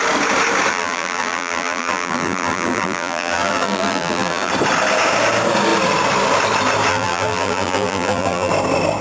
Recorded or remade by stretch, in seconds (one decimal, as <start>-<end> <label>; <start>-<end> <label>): 0.0-0.7 recorded; 0.7-4.5 remade; 4.5-6.9 recorded; 6.9-8.5 remade; 8.5-9.0 recorded